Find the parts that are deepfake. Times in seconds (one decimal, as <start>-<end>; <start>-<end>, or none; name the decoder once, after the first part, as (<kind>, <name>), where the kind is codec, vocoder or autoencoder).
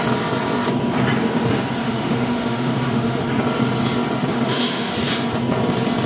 1.8-3.3 (autoencoder, DAC-VAE); 4.3-4.9